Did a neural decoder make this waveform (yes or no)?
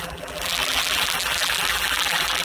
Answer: yes